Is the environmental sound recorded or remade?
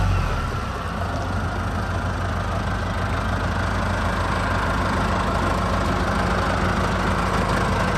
recorded